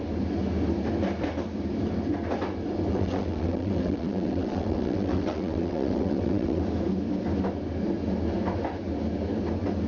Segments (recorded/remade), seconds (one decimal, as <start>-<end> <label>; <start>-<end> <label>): 0.0-2.9 recorded; 2.9-6.6 remade; 6.6-9.9 recorded